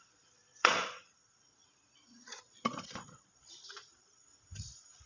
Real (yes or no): no